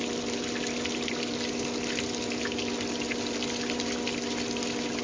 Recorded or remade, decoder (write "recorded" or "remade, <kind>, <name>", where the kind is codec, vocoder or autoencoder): recorded